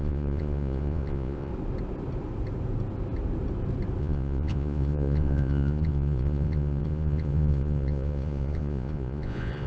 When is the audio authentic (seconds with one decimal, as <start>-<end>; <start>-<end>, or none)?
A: 1.5-4.0

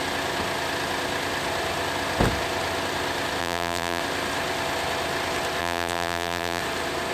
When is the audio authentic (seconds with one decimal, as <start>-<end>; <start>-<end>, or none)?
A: 0.0-3.4; 4.0-5.6; 6.6-7.1

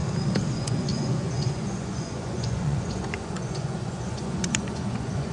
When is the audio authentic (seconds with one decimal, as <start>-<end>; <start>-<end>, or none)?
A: 0.0-0.5

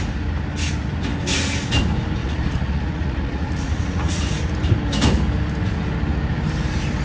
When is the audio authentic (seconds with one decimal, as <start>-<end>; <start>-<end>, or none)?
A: 0.0-2.2; 4.2-7.0

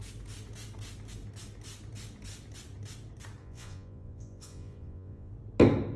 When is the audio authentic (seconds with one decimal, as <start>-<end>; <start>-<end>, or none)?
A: 0.0-3.4; 5.3-6.0